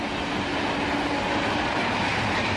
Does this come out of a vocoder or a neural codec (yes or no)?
no